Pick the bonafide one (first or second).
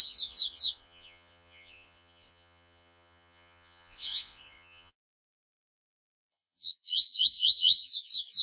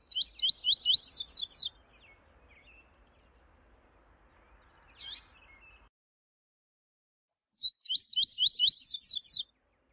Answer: second